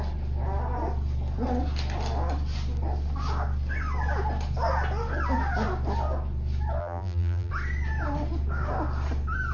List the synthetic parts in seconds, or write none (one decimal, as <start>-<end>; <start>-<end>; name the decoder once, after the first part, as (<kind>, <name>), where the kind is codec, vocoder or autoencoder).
6.8-7.5 (vocoder, BigVGAN v2)